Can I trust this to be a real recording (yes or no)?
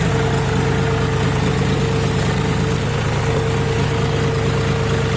yes